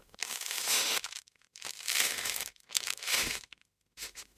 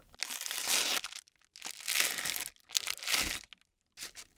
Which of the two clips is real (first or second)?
second